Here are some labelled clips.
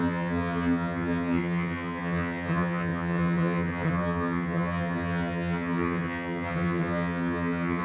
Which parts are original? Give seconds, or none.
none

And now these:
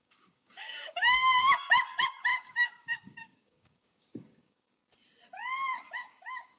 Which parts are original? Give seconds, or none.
4.8-5.9

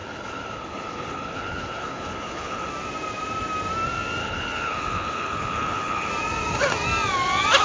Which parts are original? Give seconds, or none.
2.7-4.2; 6.1-7.6

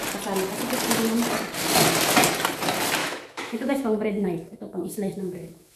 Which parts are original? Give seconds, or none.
0.0-3.0